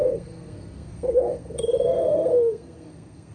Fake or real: fake